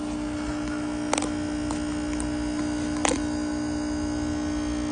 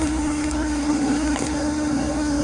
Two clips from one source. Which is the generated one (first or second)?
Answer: second